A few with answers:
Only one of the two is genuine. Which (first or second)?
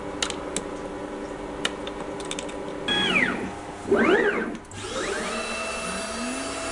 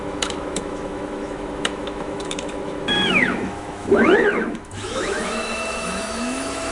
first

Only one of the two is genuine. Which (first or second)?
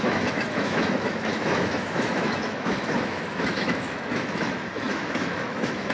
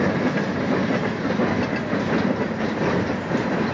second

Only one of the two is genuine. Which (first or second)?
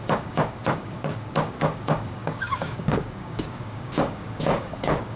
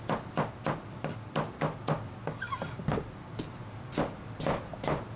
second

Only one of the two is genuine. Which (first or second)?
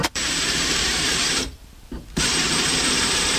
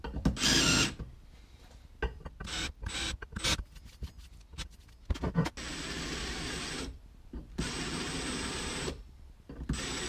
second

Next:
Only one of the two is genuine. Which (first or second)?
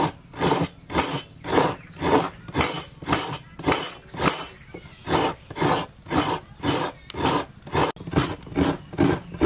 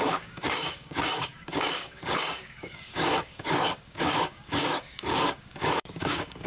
first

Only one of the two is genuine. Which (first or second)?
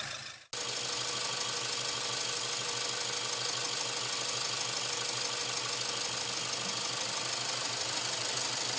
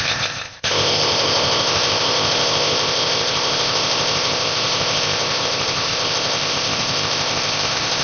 first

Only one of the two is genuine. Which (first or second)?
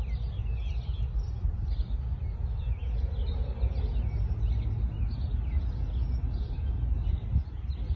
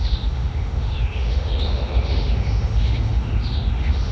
first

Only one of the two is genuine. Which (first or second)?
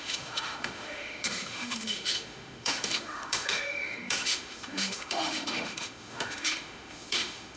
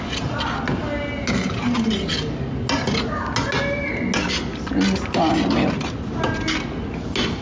second